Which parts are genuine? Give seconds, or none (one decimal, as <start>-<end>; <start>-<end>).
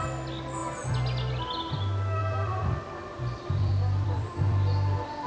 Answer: 0.0-2.2